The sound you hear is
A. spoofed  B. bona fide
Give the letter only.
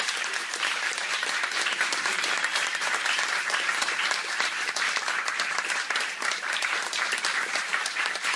A